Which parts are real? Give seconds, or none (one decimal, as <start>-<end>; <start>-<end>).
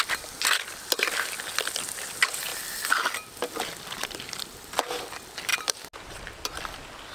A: 0.0-7.1